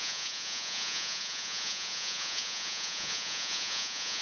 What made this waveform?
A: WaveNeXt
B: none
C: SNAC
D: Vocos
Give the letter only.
D